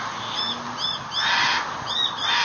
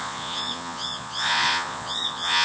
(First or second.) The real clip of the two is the first